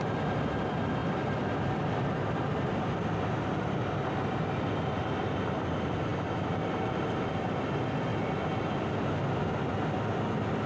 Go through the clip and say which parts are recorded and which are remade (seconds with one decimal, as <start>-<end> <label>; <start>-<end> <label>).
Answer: 0.0-1.0 recorded; 1.0-2.7 remade; 2.7-6.1 recorded; 6.1-6.7 remade; 6.7-10.7 recorded